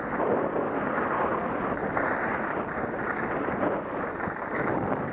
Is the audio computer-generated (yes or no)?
no